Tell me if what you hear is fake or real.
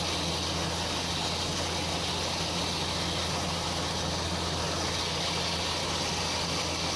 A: real